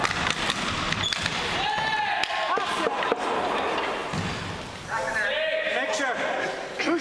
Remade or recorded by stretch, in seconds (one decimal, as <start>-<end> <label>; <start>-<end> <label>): 0.0-7.0 recorded

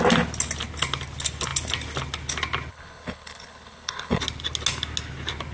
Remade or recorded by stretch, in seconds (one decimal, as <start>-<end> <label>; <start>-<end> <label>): 0.0-2.7 recorded; 2.7-4.2 remade; 4.2-5.5 recorded

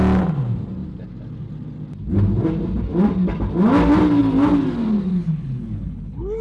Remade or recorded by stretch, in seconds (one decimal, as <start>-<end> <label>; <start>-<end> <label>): 0.0-5.1 recorded; 5.1-6.4 remade

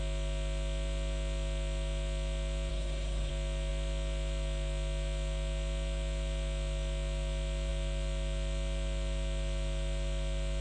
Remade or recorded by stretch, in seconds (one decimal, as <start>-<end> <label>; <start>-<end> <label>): 0.0-2.7 recorded; 2.7-3.3 remade; 3.3-10.6 recorded

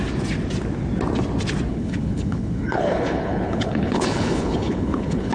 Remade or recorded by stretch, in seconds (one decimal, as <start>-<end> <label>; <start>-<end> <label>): 0.0-1.7 recorded; 1.7-5.3 remade

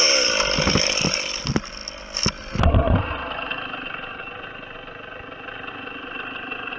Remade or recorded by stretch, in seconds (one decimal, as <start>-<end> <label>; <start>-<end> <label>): 0.0-6.8 recorded